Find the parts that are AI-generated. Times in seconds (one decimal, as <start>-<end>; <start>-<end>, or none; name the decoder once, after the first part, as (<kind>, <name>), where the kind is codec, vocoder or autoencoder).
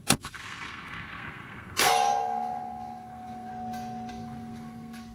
0.0-3.5 (codec, SNAC); 4.1-5.1